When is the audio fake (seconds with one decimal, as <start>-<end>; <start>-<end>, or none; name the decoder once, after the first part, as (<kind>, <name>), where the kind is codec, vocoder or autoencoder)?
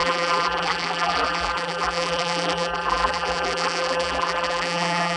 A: 0.0-5.2 (vocoder, BigVGAN v2)